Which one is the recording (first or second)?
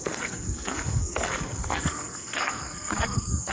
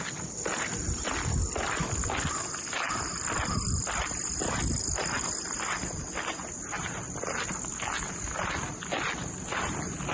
second